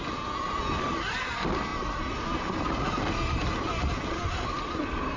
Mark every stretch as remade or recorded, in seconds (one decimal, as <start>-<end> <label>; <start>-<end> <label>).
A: 0.0-5.2 recorded